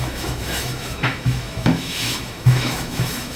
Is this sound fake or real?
fake